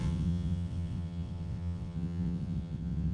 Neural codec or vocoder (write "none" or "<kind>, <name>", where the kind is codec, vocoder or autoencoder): vocoder, WaveNeXt